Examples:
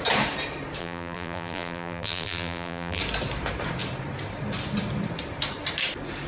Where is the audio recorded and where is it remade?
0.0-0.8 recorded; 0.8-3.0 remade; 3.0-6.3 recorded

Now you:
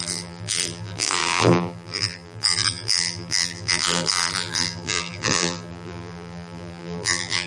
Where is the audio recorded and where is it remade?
0.0-7.5 remade

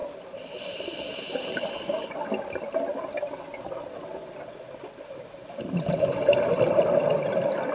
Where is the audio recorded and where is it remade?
0.0-1.7 remade; 1.7-7.7 recorded

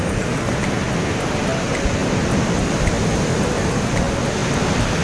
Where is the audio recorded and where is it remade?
0.0-5.0 recorded

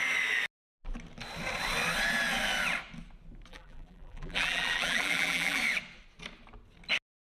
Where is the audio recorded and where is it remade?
0.0-3.5 recorded; 3.5-5.6 remade; 5.6-7.3 recorded